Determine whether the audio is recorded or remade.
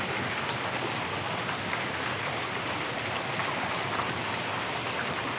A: recorded